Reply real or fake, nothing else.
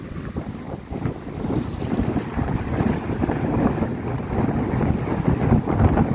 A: real